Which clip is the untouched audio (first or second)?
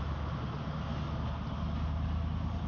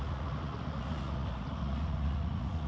first